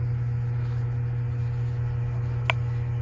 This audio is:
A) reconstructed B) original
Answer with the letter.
B